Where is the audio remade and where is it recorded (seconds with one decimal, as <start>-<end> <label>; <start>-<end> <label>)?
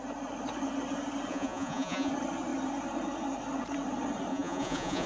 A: 0.0-1.3 recorded; 1.3-2.1 remade; 2.1-4.3 recorded; 4.3-5.1 remade